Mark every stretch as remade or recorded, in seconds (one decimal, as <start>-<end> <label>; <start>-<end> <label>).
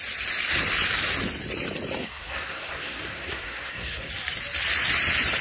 0.0-2.0 recorded; 2.0-4.1 remade; 4.1-5.4 recorded